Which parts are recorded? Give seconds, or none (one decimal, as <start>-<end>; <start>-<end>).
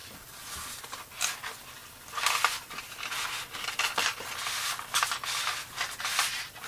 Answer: 0.0-6.7